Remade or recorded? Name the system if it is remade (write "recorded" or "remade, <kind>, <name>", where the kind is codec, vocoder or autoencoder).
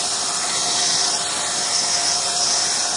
recorded